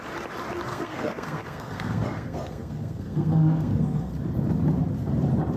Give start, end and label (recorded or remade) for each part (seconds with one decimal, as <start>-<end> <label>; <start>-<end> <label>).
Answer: 0.0-0.7 recorded; 0.7-4.1 remade; 4.1-5.6 recorded